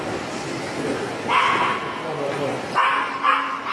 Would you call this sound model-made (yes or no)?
no